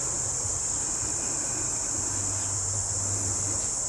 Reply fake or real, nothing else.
real